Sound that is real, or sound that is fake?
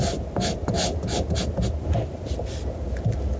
real